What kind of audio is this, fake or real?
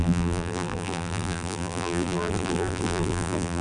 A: fake